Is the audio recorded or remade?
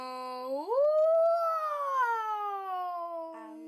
recorded